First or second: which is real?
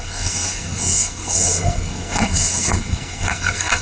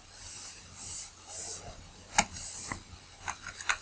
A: second